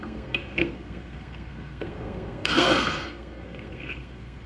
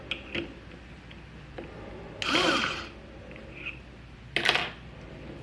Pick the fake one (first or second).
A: first